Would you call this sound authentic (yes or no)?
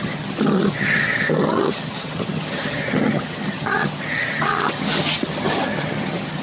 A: no